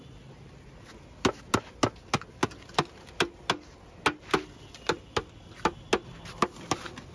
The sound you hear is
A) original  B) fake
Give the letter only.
A